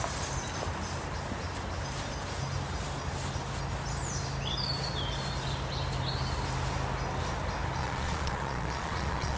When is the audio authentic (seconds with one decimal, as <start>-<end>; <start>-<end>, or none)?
0.0-7.8